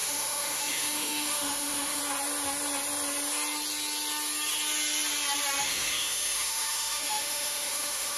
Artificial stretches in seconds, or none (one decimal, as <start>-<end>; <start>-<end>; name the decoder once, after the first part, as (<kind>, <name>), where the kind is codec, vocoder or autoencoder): 0.0-2.0 (autoencoder, DAC-VAE); 5.6-8.2

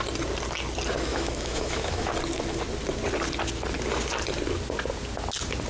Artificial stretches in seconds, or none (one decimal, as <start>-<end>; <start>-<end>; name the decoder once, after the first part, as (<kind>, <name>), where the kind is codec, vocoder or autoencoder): 1.1-2.1 (autoencoder, DAC-VAE)